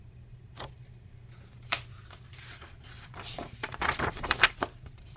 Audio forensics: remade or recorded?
remade